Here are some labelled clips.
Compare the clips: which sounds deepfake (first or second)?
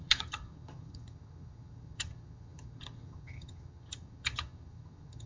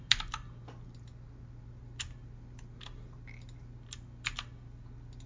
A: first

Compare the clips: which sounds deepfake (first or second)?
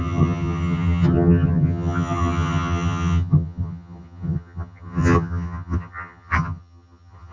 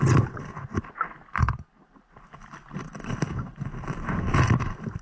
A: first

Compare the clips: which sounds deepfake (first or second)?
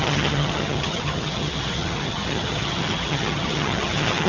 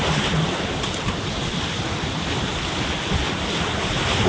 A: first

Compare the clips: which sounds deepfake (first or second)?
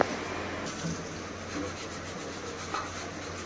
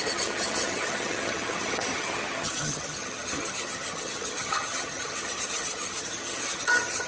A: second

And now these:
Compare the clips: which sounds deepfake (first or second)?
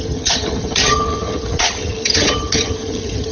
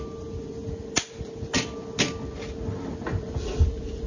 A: first